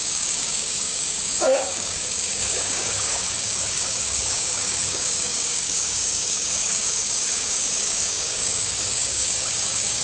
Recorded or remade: remade